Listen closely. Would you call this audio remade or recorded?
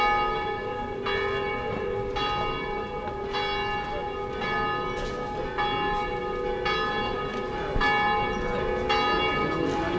recorded